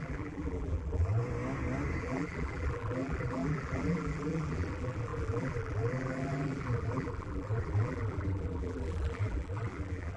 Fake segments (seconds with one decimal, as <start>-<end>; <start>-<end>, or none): 0.0-1.2; 2.0-10.2